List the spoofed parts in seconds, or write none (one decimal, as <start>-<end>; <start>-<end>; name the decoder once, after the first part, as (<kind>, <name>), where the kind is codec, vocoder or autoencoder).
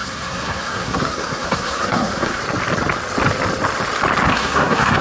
0.0-2.4 (codec, SNAC); 4.3-5.0